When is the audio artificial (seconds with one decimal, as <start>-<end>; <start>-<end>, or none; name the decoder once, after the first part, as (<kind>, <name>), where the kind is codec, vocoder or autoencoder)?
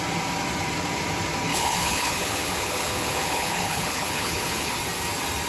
1.5-4.8 (codec, HILCodec)